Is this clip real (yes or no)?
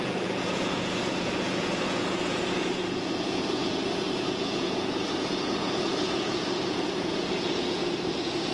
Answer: no